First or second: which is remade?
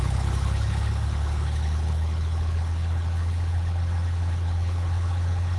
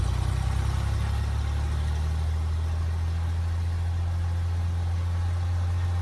first